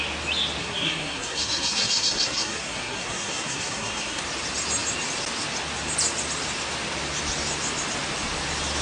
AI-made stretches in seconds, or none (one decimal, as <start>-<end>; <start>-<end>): 0.6-4.2